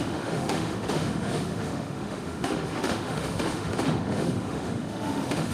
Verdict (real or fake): fake